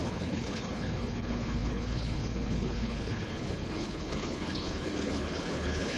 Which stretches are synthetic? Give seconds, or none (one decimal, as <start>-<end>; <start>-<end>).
0.0-6.0